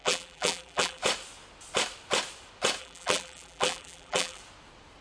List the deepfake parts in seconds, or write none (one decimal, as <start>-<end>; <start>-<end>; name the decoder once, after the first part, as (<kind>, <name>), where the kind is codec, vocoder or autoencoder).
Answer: 0.0-1.0 (vocoder, BigVGAN v2); 2.8-4.4